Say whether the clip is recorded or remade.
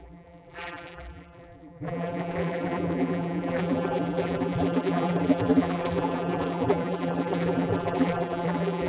remade